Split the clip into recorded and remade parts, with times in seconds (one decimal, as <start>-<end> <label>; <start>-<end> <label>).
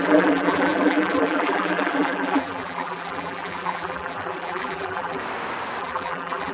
0.0-5.2 remade; 5.2-5.8 recorded; 5.8-6.5 remade